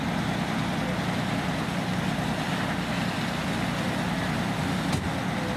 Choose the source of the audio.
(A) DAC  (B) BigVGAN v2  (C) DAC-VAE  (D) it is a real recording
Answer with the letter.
D